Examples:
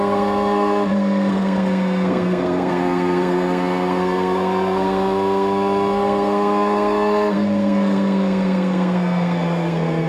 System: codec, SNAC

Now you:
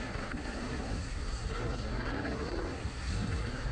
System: codec, SNAC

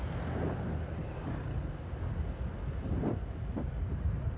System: none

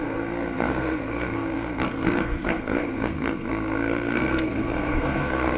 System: codec, SNAC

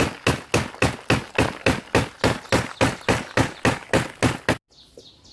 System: none